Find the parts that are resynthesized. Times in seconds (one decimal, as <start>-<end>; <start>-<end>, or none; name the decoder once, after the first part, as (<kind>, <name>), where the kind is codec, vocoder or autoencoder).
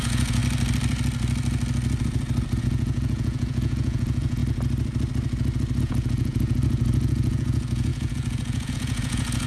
0.0-0.4 (vocoder, Vocos); 2.6-4.4; 5.8-9.5